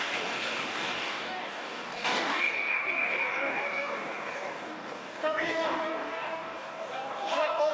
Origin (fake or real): fake